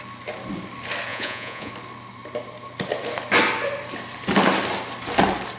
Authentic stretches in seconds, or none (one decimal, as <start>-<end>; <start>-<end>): 0.0-1.1; 1.7-5.6